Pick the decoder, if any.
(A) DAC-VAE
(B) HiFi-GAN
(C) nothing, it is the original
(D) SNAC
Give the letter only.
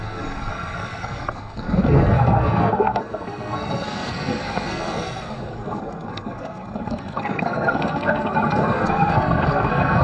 D